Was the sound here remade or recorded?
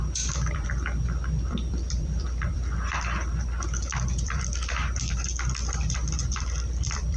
remade